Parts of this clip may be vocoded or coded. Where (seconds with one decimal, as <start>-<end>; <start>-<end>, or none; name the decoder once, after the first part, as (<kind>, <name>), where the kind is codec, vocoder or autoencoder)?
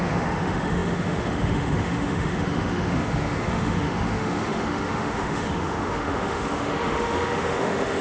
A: 0.0-8.0 (autoencoder, DAC-VAE)